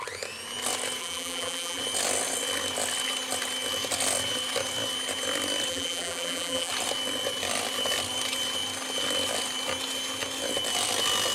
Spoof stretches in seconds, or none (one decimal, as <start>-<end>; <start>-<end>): 1.0-1.8; 5.7-6.7